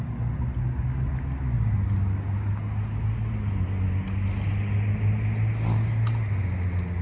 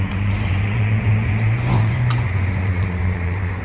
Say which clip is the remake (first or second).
second